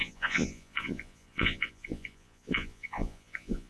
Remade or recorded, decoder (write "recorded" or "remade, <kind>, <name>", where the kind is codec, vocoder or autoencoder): remade, vocoder, Vocos